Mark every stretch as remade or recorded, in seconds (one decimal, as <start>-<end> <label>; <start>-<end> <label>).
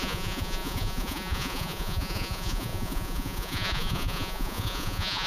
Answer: 0.0-5.3 remade